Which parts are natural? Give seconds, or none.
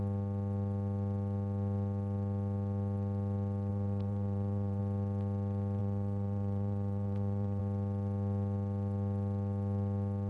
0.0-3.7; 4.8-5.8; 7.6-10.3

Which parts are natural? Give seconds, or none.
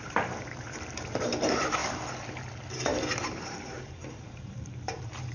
1.8-3.2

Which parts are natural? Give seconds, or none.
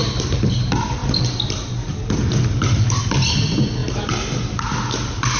0.0-5.4